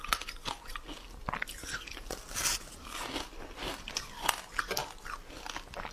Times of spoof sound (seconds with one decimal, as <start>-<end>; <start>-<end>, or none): none